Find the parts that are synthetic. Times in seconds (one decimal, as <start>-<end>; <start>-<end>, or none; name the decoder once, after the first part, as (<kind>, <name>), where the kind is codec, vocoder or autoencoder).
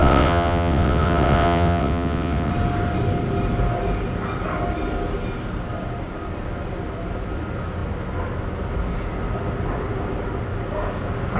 0.0-2.5 (vocoder, WaveNeXt)